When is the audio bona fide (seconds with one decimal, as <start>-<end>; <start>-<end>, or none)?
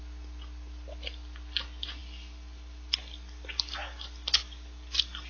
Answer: 0.0-2.0